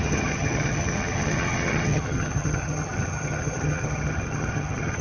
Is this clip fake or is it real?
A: fake